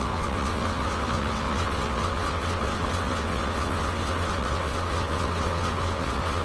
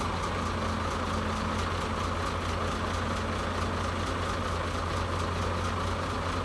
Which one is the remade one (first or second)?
first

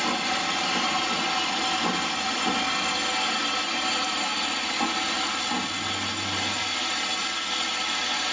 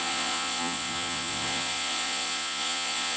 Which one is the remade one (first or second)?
second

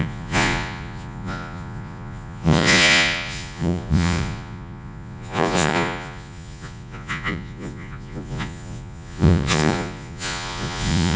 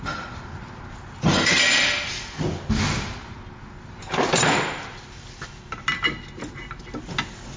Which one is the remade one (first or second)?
first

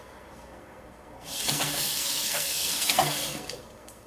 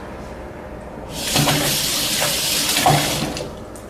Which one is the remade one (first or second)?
first